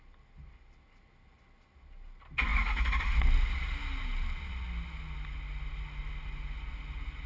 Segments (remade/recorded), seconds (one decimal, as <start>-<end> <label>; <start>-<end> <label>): 0.0-7.3 recorded